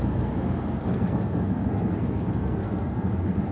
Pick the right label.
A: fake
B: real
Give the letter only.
A